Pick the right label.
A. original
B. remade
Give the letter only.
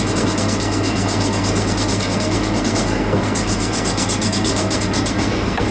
B